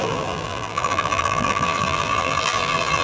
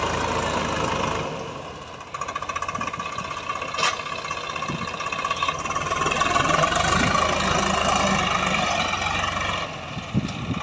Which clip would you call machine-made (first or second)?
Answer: first